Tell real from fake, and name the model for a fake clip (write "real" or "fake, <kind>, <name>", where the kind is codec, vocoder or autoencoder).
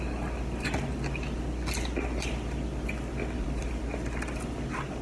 real